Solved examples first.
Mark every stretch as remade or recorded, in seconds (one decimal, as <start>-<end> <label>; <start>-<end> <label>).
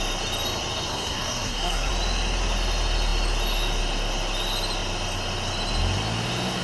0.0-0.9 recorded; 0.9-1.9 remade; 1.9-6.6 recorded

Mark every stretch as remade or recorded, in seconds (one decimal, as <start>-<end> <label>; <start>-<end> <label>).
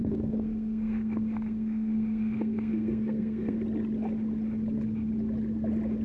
0.0-3.6 remade; 3.6-6.0 recorded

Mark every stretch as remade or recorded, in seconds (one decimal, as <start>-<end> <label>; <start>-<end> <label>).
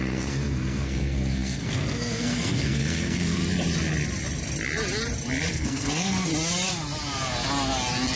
0.0-3.4 remade; 3.4-5.5 recorded; 5.5-6.3 remade; 6.3-8.2 recorded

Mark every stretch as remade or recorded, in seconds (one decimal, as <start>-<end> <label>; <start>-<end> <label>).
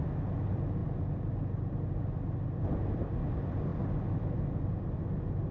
0.0-5.5 recorded